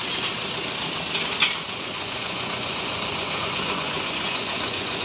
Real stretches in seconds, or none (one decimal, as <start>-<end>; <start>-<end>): 0.0-1.6